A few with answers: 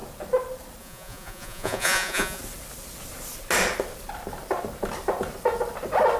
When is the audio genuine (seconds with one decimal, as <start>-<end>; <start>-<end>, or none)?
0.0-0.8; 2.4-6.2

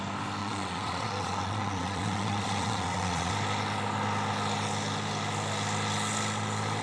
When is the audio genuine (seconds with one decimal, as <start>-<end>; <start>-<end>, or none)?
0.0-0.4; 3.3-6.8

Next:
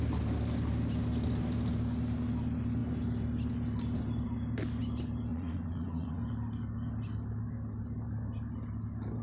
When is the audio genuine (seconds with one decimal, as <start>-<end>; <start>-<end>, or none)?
0.0-5.3; 6.2-9.2